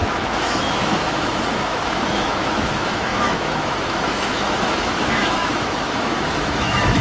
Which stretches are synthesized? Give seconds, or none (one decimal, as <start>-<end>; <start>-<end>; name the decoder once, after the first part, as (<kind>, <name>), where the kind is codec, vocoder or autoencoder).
0.0-7.0 (autoencoder, DAC-VAE)